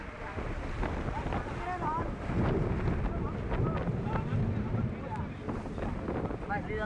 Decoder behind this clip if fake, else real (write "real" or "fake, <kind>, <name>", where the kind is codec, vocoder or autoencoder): real